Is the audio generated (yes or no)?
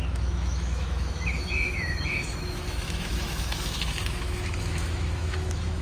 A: yes